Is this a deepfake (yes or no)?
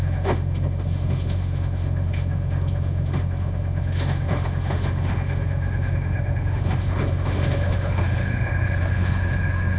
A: yes